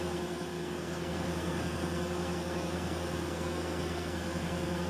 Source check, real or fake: fake